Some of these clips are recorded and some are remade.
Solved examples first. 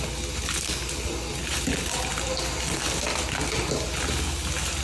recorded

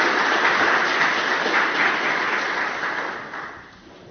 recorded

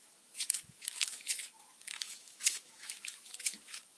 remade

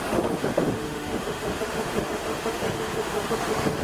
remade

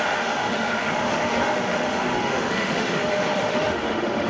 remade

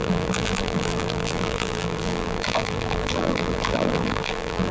remade